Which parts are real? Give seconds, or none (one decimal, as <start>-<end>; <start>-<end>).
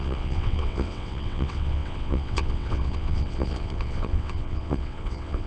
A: none